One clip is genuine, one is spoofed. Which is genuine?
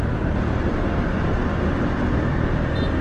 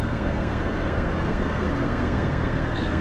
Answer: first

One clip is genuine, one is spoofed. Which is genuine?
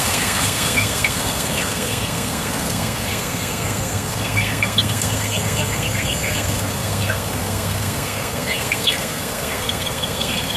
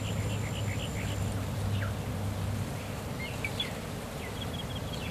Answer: second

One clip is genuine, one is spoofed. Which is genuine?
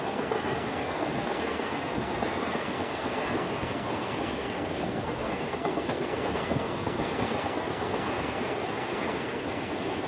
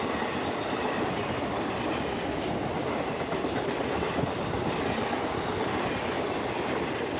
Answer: second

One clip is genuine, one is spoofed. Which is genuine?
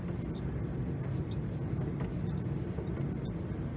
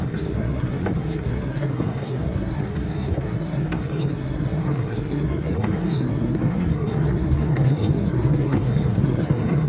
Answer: first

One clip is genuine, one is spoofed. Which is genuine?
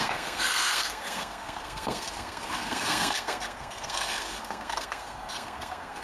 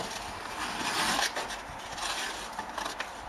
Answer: second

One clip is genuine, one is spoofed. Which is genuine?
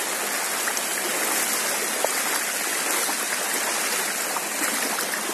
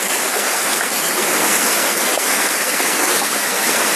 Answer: first